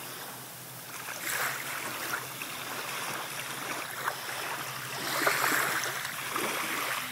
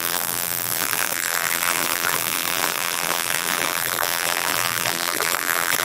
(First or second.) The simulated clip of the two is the second